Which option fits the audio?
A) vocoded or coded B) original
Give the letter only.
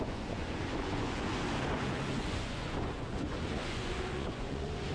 A